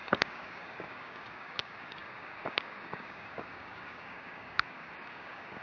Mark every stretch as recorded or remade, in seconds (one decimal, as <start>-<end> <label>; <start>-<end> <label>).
0.0-5.6 remade